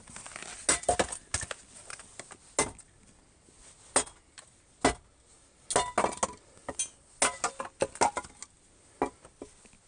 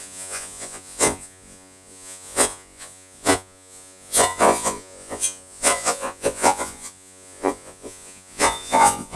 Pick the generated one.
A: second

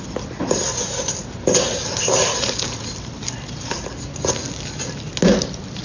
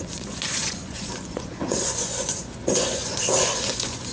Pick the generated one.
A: second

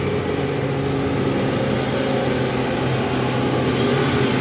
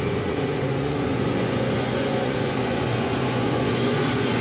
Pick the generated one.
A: second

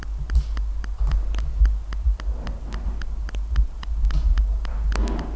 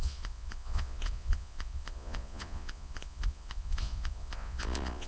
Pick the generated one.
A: second